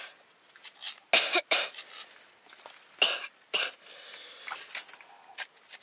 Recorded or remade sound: recorded